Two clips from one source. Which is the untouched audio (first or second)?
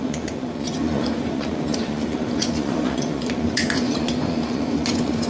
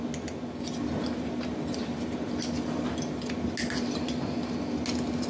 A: second